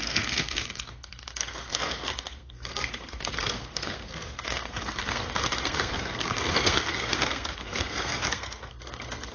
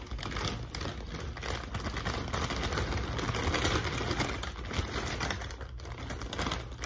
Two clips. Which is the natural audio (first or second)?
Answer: second